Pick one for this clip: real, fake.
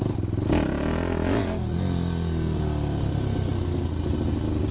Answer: real